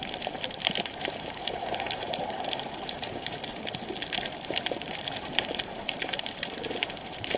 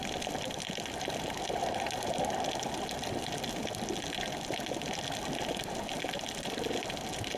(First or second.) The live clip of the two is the second